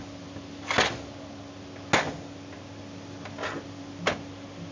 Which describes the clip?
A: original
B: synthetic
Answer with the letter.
A